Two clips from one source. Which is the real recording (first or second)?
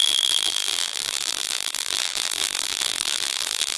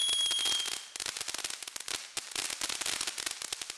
second